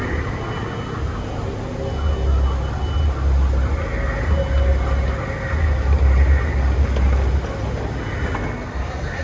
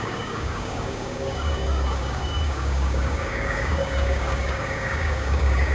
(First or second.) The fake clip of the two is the second